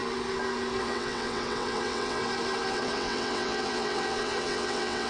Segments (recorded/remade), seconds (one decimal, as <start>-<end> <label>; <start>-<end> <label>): 0.0-0.8 recorded; 0.8-2.2 remade; 2.2-2.7 recorded; 2.7-5.1 remade